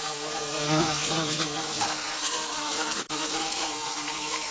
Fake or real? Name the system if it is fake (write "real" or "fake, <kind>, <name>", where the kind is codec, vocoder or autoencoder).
fake, codec, SNAC